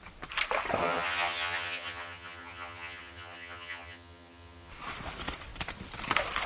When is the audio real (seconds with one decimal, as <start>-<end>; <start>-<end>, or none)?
0.0-0.8; 4.7-6.5